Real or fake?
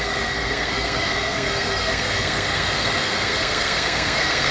fake